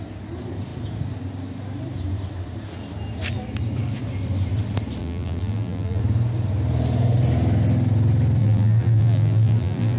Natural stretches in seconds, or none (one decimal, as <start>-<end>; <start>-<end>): 0.0-5.0; 6.0-8.4